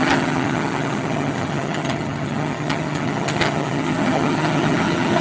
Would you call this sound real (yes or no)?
no